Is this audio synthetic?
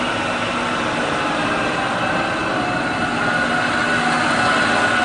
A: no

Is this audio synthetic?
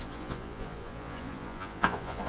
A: yes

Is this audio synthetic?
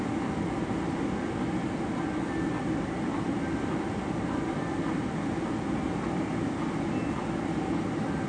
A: no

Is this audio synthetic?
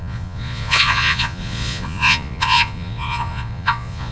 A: yes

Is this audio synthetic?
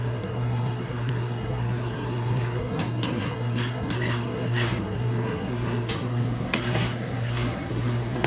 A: yes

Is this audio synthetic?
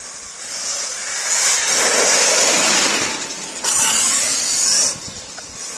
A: no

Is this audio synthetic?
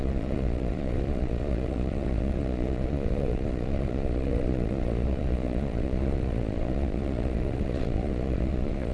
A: yes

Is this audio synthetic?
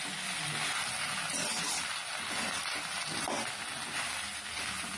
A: no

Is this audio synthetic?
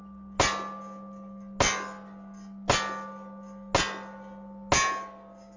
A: no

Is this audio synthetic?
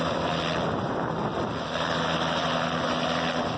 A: no